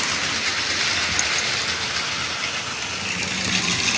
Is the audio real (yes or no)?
yes